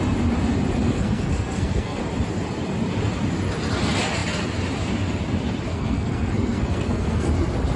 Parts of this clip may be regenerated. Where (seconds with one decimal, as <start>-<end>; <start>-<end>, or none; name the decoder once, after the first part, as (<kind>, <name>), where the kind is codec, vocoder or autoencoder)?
0.8-2.0 (codec, SNAC); 5.7-7.3